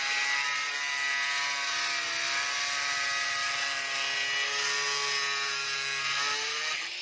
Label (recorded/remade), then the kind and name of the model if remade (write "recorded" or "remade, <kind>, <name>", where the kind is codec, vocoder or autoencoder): recorded